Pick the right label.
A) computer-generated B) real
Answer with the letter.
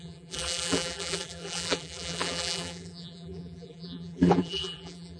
A